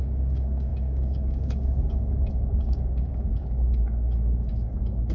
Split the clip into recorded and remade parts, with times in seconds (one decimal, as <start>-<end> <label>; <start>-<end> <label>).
0.0-5.1 remade